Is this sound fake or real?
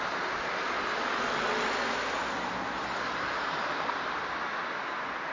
real